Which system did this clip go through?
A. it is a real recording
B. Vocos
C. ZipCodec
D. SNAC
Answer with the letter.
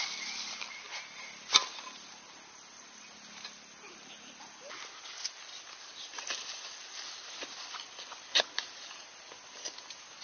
A